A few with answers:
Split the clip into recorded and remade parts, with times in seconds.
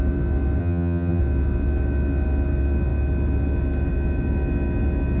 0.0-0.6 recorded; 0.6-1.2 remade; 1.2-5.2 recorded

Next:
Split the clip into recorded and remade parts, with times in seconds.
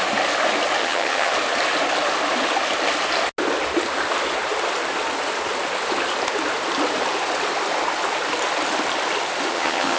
0.0-0.8 recorded; 0.8-1.3 remade; 1.3-9.5 recorded; 9.5-10.0 remade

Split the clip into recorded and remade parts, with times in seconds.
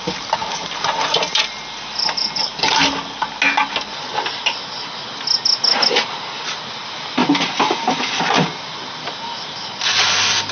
0.0-10.5 recorded